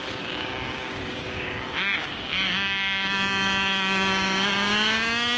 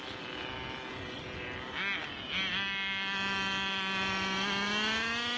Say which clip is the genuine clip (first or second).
second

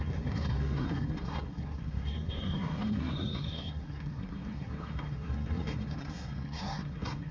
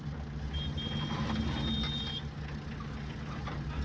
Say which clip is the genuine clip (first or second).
second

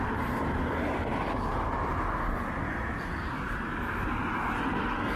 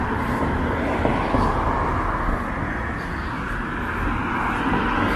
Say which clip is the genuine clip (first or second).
second